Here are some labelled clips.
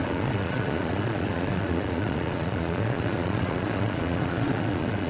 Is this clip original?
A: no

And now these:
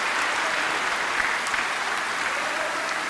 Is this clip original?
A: yes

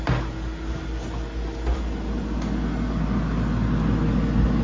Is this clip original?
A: yes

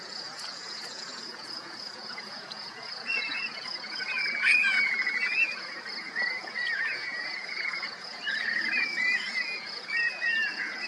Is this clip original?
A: no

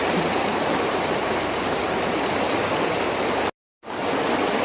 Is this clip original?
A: yes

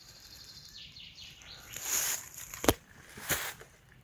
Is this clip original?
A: no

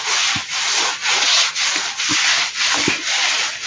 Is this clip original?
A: yes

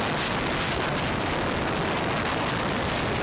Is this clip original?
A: yes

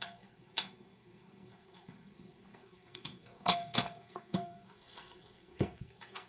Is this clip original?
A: no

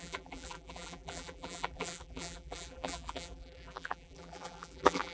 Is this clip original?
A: no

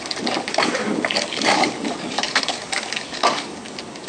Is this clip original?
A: no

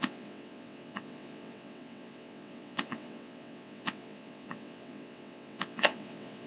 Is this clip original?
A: no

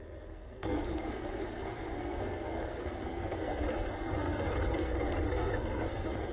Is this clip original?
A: no